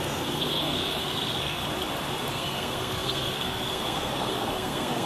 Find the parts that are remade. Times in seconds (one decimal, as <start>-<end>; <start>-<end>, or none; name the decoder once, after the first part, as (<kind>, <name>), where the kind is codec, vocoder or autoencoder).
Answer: 0.0-1.6 (codec, SNAC); 2.3-5.1